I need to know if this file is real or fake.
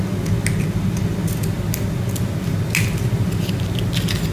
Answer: real